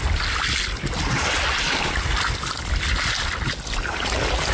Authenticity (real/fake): real